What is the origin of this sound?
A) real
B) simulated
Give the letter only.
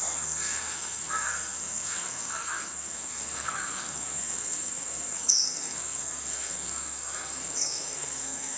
B